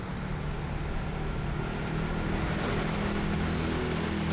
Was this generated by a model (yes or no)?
no